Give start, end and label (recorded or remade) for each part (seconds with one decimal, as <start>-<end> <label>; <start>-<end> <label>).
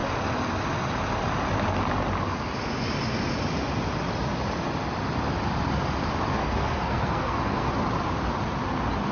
0.0-6.4 recorded; 6.4-7.7 remade; 7.7-9.1 recorded